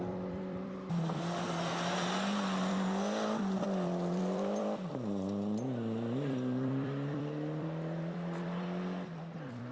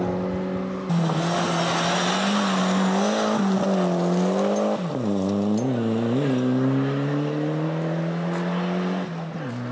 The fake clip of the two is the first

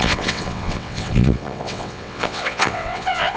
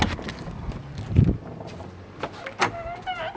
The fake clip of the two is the first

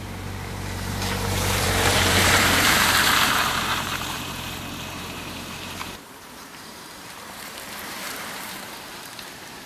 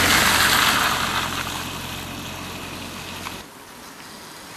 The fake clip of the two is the first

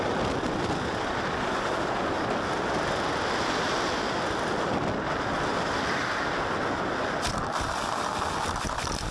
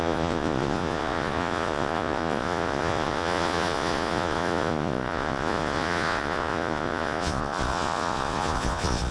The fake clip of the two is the second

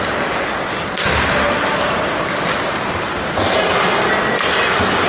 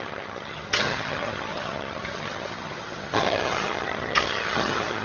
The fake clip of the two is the second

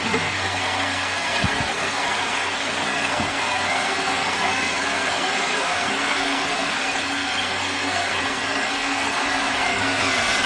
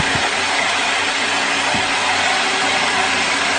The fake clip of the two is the first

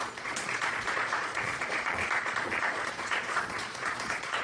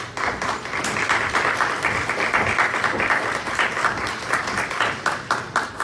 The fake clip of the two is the first